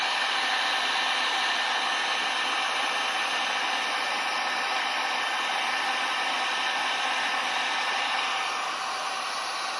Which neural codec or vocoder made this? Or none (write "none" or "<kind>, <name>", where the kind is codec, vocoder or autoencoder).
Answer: none